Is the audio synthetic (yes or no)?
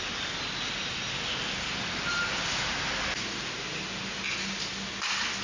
no